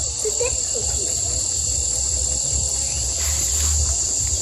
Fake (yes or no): no